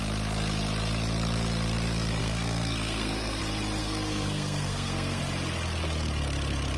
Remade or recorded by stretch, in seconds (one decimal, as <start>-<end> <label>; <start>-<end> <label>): 0.0-2.2 recorded; 2.2-3.4 remade; 3.4-3.8 recorded; 3.8-5.2 remade; 5.2-6.8 recorded